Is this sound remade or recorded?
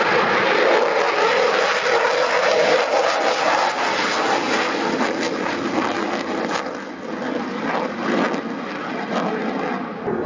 recorded